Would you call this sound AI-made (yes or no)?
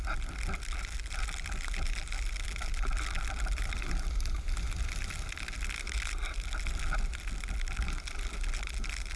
no